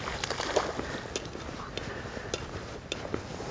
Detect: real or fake real